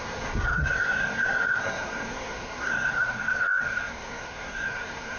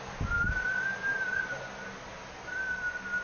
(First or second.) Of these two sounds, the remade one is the first